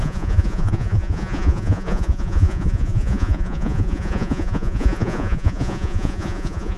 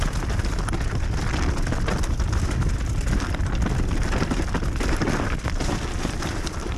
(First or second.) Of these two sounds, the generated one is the first